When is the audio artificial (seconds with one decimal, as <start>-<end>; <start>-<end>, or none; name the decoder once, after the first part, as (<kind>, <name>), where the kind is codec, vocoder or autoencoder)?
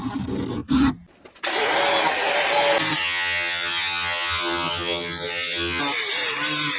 3.0-5.8 (vocoder, HiFi-GAN)